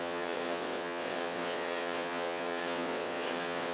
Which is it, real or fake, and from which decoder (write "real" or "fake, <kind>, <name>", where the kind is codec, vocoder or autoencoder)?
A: fake, vocoder, WaveNeXt